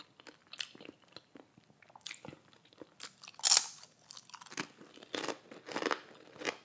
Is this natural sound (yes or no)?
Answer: yes